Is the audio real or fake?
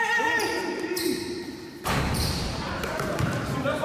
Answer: fake